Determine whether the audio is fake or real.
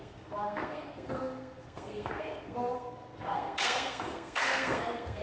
fake